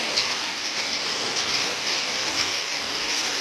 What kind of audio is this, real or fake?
fake